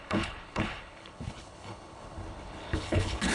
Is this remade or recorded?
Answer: remade